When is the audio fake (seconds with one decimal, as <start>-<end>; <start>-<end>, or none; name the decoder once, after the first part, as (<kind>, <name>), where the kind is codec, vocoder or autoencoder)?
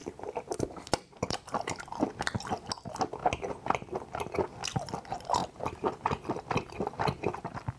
0.0-1.8 (vocoder, BigVGAN v2); 5.4-6.1